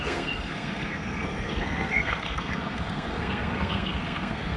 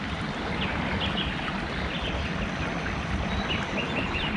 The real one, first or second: second